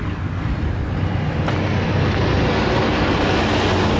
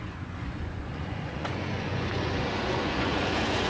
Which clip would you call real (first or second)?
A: first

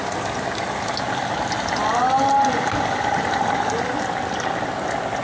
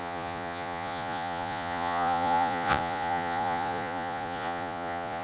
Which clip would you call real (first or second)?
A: first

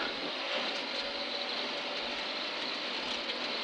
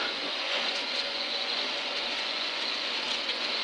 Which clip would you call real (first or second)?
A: first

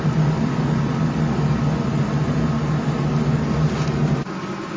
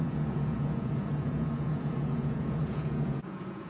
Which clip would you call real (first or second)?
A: first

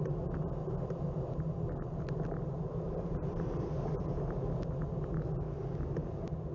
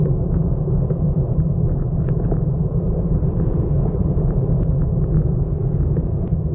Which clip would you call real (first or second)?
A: first